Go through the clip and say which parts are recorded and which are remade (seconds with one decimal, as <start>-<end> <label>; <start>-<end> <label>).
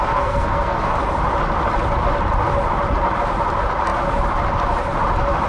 0.0-1.0 remade; 1.0-5.5 recorded